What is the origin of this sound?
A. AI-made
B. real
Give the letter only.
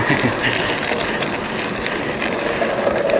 B